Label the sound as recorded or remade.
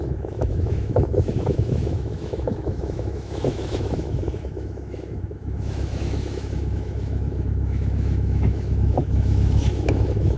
remade